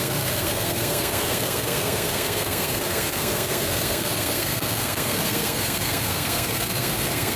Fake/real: fake